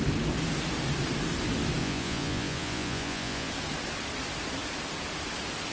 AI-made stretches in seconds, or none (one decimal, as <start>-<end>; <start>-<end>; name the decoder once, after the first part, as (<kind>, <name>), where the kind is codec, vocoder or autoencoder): 1.8-3.5 (vocoder, Vocos)